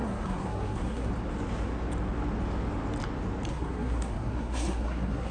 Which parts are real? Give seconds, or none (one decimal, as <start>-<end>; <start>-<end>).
1.1-3.5